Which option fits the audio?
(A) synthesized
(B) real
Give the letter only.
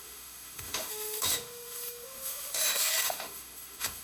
A